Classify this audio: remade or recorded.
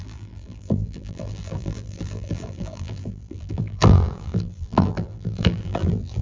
remade